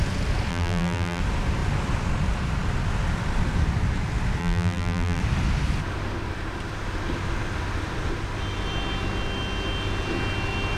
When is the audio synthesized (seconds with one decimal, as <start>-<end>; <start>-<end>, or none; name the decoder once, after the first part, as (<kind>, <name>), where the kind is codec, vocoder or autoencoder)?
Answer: 0.5-1.2 (vocoder, BigVGAN v2); 4.4-5.2